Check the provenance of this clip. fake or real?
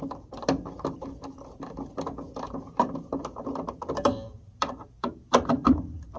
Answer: real